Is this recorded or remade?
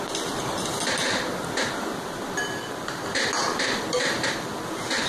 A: recorded